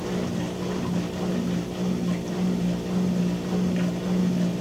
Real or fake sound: real